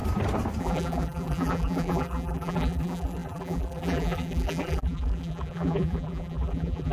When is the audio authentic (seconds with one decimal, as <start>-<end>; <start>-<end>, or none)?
0.0-0.6